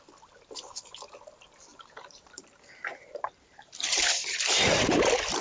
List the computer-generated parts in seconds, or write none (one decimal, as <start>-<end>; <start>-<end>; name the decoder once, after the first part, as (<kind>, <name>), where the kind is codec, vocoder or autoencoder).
1.7-4.9 (vocoder, BigVGAN v2)